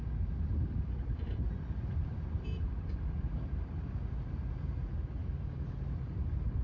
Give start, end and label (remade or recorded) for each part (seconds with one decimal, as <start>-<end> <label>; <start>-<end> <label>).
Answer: 0.0-6.6 remade

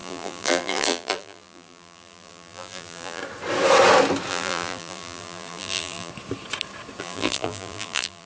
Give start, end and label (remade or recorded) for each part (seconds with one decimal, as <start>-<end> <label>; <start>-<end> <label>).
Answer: 0.0-3.2 remade; 3.2-4.3 recorded; 4.3-6.1 remade; 6.1-7.0 recorded; 7.0-8.3 remade

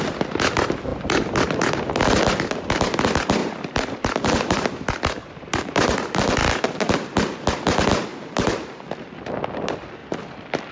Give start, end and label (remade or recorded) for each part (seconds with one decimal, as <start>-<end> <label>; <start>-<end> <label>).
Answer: 0.0-3.4 recorded; 3.4-6.9 remade; 6.9-8.1 recorded; 8.1-8.8 remade; 8.8-10.0 recorded; 10.0-10.7 remade